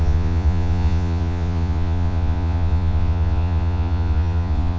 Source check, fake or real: fake